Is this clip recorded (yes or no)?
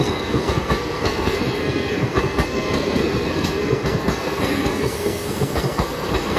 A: no